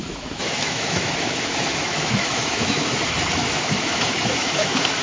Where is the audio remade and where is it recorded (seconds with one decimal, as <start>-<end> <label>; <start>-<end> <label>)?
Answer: 0.0-3.0 remade; 3.0-3.4 recorded; 3.4-5.0 remade